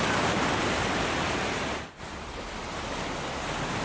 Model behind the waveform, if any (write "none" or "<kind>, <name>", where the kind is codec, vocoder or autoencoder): none